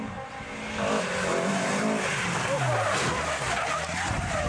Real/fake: real